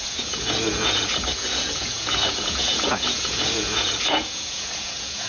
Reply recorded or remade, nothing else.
remade